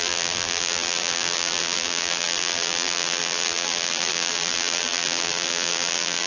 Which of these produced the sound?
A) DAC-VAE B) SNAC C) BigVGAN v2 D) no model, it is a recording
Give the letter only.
C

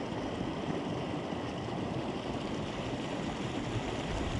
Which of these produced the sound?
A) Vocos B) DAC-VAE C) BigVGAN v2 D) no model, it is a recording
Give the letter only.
D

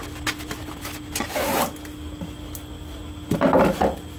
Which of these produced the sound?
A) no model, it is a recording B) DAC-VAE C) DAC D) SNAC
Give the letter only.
A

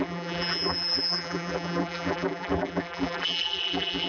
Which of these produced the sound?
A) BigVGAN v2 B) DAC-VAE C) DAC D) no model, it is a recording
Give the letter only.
A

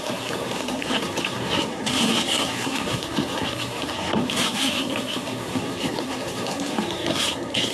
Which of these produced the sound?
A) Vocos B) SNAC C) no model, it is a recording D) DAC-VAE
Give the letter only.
B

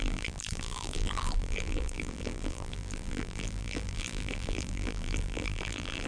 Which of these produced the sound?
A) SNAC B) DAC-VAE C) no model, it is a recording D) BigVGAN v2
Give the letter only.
D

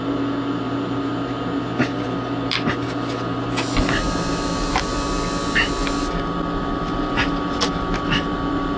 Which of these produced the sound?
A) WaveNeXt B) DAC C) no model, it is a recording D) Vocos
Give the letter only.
C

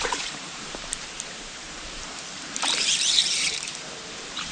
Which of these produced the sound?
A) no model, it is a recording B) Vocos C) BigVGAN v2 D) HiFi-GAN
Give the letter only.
C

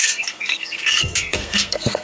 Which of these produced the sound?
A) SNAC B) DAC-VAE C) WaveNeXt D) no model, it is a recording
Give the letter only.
A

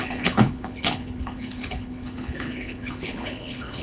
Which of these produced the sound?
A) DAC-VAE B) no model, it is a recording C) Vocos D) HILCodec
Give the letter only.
D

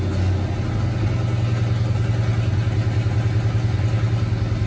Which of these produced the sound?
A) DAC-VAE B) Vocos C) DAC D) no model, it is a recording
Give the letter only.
D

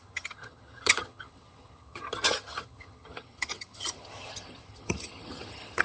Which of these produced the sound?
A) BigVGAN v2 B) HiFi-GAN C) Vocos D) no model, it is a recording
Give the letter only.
B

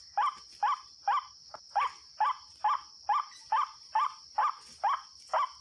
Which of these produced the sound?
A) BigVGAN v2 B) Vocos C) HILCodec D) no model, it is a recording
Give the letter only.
D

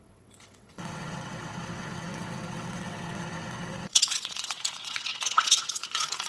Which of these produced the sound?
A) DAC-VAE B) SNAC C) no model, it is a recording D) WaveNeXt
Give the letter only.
D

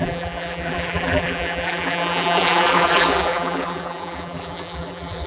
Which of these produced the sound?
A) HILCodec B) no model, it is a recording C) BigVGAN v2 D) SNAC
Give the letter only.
C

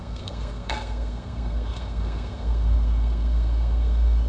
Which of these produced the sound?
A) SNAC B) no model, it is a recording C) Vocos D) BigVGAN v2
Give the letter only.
A